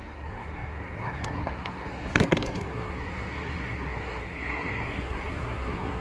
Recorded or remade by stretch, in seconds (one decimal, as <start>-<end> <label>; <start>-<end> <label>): 0.0-6.0 remade